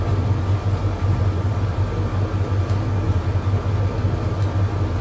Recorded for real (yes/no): yes